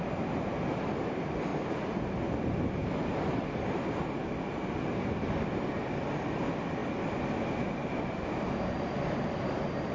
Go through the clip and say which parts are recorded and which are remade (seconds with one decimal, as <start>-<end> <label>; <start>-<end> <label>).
0.0-9.9 recorded